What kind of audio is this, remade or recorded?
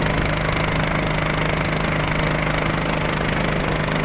recorded